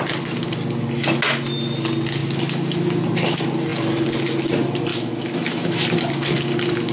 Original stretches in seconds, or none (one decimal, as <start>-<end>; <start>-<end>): 0.0-4.9; 5.8-6.9